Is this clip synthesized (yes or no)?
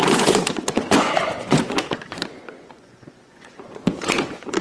yes